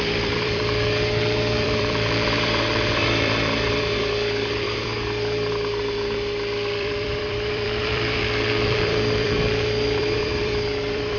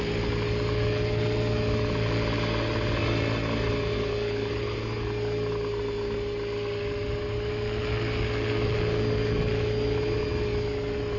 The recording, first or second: second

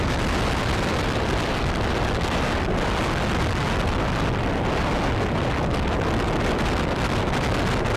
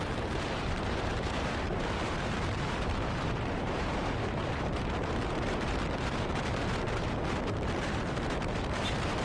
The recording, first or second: first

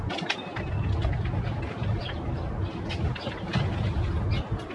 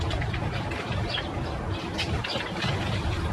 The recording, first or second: first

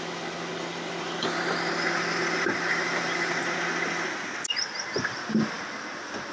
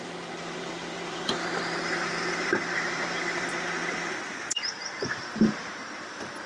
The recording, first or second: first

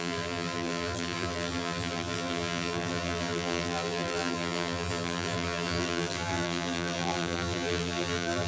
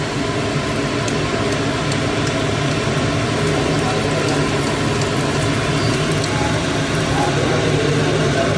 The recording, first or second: second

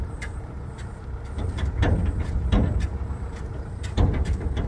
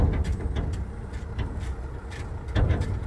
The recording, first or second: second